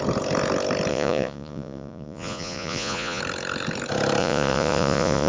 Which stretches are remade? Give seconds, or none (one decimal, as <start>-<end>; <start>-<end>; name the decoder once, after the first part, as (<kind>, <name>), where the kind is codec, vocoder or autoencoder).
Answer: 0.9-3.2 (vocoder, Vocos); 4.2-5.3